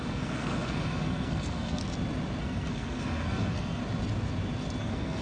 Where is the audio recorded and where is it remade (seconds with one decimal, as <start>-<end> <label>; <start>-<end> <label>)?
0.0-1.8 remade; 1.8-2.4 recorded; 2.4-3.8 remade; 3.8-4.8 recorded; 4.8-5.2 remade